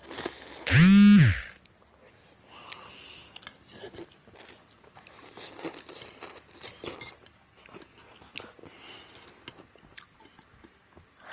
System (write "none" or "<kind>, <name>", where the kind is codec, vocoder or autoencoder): none